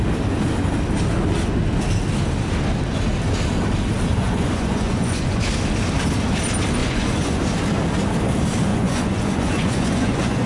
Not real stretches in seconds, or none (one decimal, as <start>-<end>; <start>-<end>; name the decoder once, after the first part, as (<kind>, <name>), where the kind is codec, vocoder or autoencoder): 4.1-5.4 (vocoder, Vocos); 6.8-7.4; 8.7-10.5